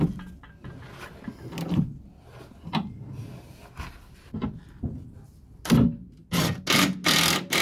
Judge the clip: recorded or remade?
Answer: recorded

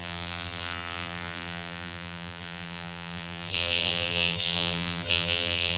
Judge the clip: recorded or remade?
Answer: remade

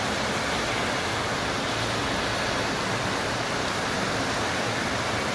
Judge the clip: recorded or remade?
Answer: recorded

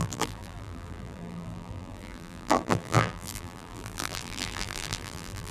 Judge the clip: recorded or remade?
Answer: remade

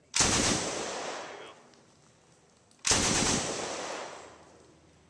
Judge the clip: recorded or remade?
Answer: recorded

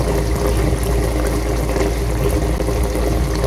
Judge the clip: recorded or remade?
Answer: recorded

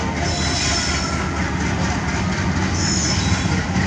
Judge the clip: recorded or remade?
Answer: recorded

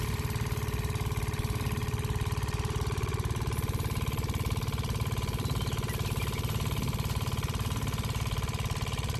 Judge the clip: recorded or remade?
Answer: recorded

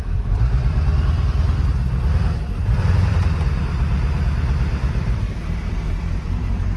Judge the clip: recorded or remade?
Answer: remade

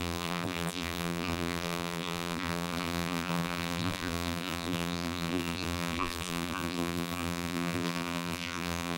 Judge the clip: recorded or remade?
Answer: remade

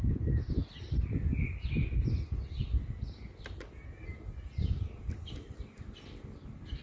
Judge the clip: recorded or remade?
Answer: recorded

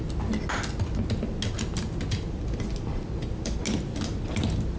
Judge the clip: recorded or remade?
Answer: recorded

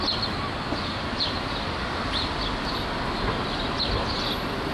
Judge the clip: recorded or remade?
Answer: recorded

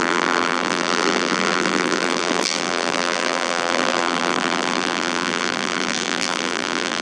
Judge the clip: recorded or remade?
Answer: remade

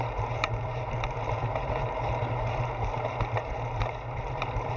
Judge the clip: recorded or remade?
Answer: remade